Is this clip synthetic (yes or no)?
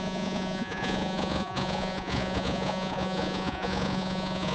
yes